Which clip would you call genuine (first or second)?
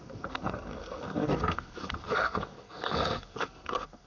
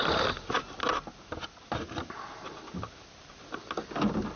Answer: second